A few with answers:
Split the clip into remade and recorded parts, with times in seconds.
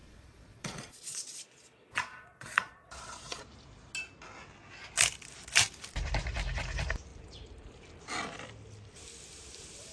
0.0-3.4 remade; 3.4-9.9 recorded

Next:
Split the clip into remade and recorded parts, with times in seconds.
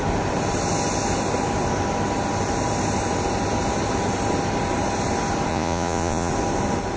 0.0-5.5 recorded; 5.5-6.3 remade; 6.3-7.0 recorded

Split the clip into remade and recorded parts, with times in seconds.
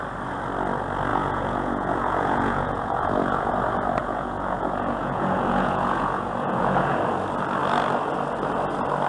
0.0-1.1 recorded; 1.1-3.5 remade; 3.5-4.0 recorded; 4.0-7.0 remade; 7.0-9.1 recorded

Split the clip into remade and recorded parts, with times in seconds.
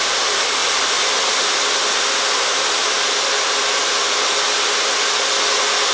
0.0-5.9 recorded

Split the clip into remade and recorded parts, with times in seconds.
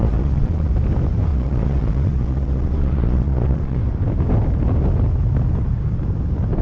0.0-0.7 remade; 0.7-1.3 recorded; 1.3-3.8 remade; 3.8-6.6 recorded